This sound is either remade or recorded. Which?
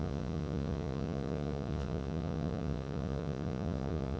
remade